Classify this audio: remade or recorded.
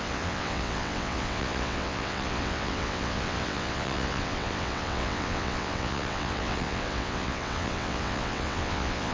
remade